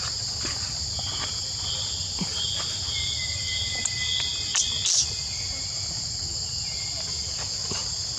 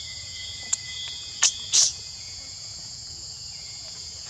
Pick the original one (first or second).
first